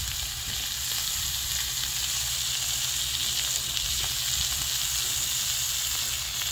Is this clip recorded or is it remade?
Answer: recorded